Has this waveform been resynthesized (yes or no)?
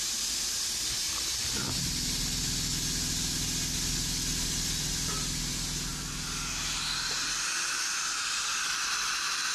no